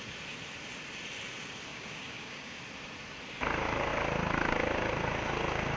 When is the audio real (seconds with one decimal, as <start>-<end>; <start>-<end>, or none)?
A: 0.0-1.7; 2.6-5.8